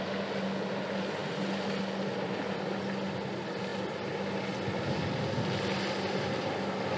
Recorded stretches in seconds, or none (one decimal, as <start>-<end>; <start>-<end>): 0.0-7.0